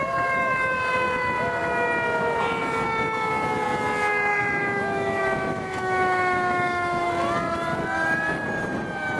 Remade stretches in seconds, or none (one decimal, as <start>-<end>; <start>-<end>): 4.3-7.1